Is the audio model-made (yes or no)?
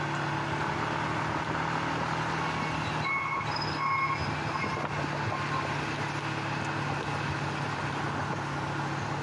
no